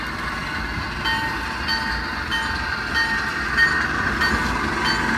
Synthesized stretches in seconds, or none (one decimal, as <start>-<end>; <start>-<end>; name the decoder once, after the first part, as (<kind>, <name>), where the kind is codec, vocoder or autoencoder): none